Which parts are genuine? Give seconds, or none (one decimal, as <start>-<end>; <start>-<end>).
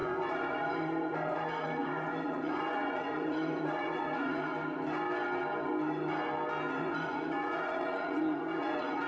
4.5-6.8